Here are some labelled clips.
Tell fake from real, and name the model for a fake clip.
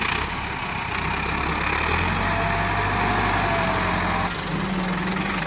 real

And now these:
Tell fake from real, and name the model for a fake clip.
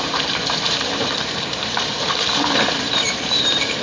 fake, vocoder, BigVGAN v2